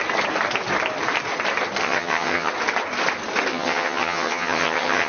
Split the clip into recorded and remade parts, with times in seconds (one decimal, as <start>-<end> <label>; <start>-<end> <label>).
0.0-1.8 recorded; 1.8-2.5 remade; 2.5-3.5 recorded; 3.5-5.1 remade